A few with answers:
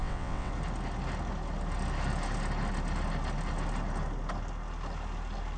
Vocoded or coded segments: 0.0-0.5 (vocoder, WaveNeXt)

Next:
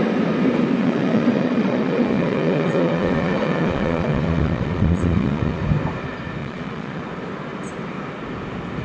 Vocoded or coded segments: 0.8-5.6 (vocoder, Vocos); 6.4-7.0

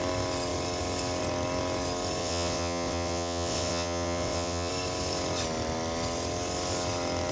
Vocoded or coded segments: 2.2-4.7 (vocoder, WaveNeXt)

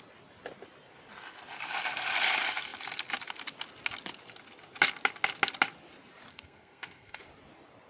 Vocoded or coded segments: 6.3-7.2 (codec, SNAC)

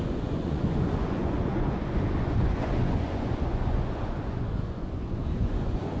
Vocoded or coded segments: 0.0-6.0 (vocoder, Vocos)

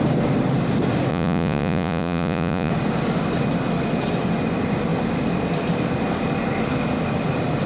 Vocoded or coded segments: 1.1-2.7 (vocoder, Vocos)